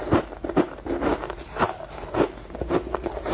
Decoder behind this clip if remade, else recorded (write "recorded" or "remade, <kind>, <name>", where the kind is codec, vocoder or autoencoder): recorded